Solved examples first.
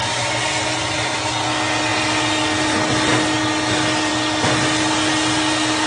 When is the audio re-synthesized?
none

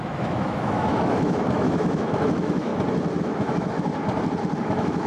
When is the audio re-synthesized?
0.0-2.7; 3.2-3.9; 4.6-5.1

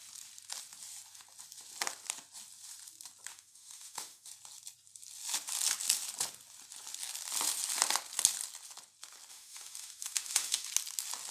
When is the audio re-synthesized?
3.3-4.3; 9.3-10.7

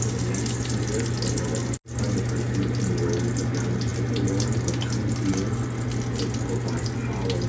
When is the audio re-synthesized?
none

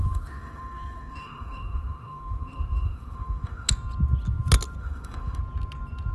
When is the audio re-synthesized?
0.0-3.7; 4.8-5.4